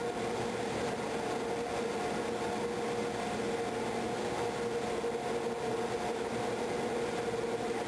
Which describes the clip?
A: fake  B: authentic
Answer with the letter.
B